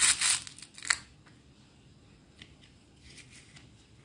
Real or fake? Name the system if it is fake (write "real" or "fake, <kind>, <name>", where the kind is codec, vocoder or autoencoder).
real